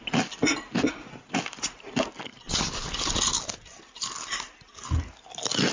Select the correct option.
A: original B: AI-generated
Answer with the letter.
A